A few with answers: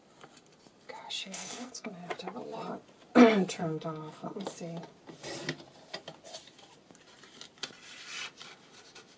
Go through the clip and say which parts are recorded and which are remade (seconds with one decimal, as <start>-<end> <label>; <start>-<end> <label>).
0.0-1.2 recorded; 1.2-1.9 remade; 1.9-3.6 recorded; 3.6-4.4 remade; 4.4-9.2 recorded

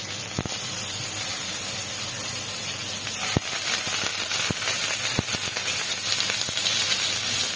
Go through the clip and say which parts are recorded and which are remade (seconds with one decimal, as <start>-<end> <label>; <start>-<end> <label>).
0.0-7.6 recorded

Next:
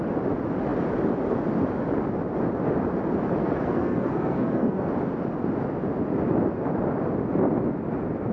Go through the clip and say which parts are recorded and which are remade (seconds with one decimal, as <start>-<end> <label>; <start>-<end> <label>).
0.0-3.4 recorded; 3.4-4.9 remade; 4.9-8.3 recorded

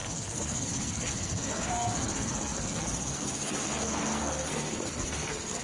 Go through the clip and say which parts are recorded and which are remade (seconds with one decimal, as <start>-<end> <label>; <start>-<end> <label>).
0.0-5.6 remade

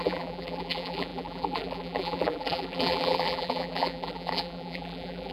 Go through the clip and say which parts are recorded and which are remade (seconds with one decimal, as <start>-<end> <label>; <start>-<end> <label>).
0.0-5.3 remade